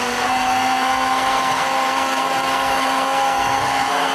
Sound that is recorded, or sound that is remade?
remade